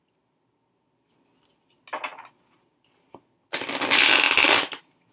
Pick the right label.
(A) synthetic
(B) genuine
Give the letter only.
B